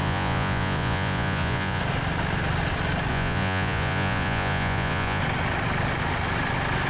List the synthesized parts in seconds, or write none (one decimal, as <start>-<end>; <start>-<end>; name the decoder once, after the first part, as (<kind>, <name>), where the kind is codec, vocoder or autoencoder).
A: 0.0-1.8 (vocoder, Vocos); 3.1-5.2